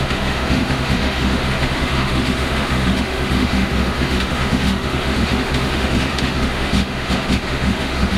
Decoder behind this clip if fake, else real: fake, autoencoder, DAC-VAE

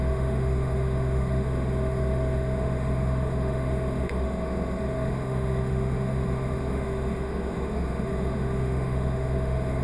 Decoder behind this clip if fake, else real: fake, autoencoder, DAC-VAE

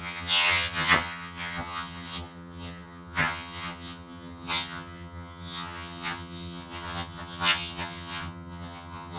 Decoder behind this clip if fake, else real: fake, vocoder, HiFi-GAN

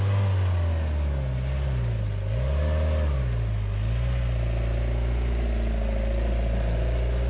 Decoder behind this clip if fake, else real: real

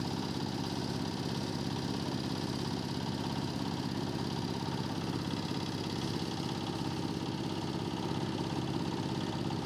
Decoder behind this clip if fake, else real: real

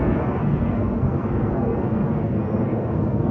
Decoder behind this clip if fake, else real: fake, codec, SNAC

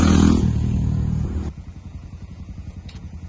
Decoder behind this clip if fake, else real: fake, vocoder, Vocos